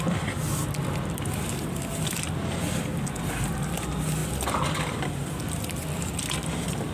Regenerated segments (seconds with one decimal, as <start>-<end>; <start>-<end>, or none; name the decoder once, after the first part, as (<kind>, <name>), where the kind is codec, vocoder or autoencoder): none